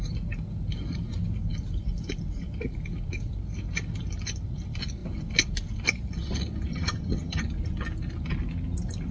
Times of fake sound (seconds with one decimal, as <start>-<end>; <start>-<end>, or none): 6.7-7.4